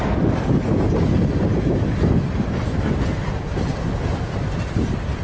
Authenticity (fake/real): real